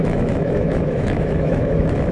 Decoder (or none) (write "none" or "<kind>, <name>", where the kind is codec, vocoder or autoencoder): autoencoder, DAC-VAE